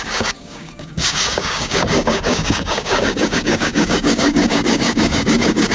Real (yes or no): no